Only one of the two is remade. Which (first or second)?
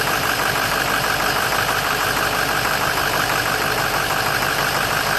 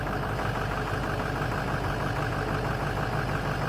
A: first